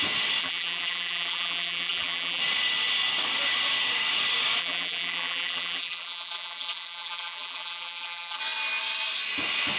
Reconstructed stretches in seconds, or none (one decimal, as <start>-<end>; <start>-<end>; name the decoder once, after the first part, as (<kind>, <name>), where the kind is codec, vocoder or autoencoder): 0.4-2.4 (vocoder, BigVGAN v2); 4.6-8.4